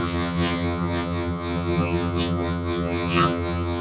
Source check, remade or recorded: remade